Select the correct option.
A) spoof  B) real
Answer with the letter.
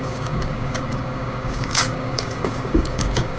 A